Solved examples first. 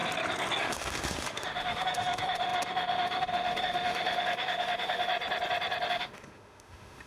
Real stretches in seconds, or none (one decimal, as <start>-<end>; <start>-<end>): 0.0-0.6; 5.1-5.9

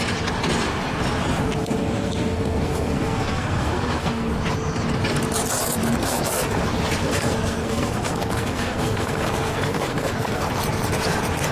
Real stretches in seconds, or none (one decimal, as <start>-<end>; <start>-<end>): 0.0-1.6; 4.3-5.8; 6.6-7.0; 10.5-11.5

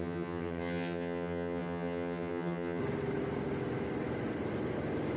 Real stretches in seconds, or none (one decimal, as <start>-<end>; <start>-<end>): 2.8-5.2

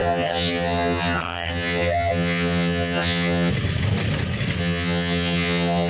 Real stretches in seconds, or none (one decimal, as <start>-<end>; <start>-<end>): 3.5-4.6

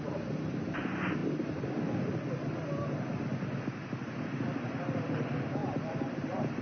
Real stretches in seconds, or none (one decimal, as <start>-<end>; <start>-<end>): 0.0-5.6